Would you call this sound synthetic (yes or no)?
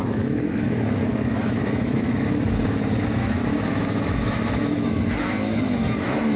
yes